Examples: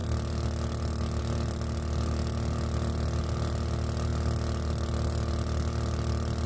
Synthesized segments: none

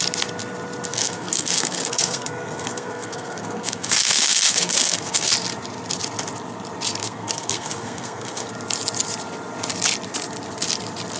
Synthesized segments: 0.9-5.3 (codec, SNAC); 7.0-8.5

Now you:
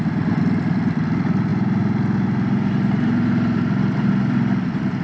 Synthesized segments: none